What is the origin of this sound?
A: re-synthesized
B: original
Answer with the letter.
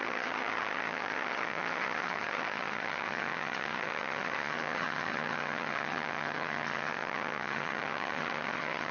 A